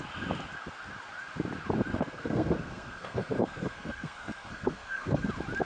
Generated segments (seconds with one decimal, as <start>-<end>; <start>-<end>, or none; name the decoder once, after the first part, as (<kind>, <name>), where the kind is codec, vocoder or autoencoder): 1.9-5.3 (codec, SNAC)